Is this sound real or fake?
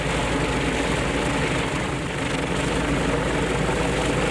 real